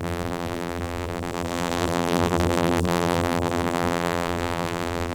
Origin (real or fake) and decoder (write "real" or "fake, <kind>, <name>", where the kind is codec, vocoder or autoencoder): fake, vocoder, BigVGAN v2